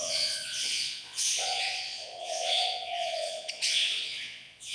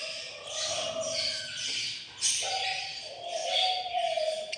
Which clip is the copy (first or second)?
first